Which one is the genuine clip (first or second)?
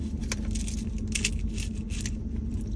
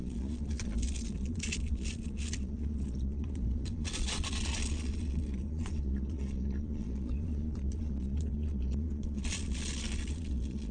first